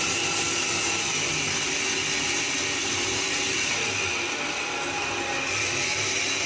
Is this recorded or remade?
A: recorded